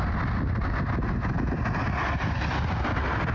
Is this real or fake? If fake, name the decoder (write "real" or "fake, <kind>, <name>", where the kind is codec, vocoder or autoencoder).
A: real